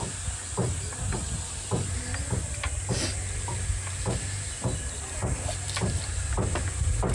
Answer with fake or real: real